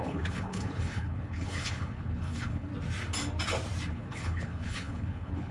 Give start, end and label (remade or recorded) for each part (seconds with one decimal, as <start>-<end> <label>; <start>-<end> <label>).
0.0-2.7 remade; 2.7-3.9 recorded; 3.9-5.5 remade